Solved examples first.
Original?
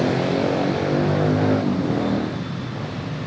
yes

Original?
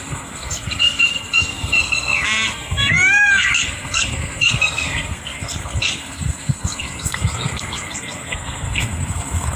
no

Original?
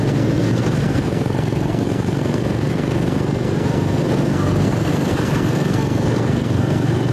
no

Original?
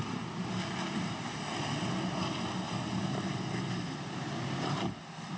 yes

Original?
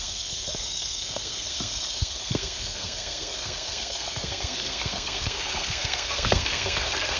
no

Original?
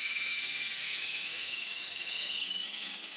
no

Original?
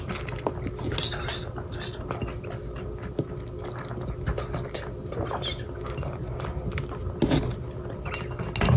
yes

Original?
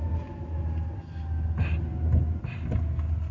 yes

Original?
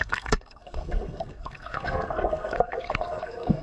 no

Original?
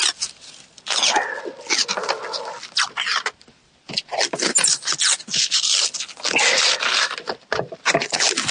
yes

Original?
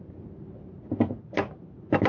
yes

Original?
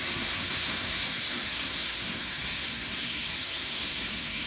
no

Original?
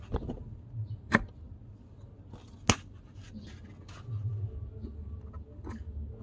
yes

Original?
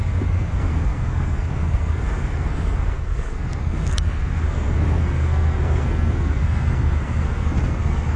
no